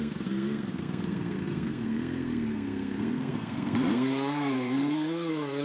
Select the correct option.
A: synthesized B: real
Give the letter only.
A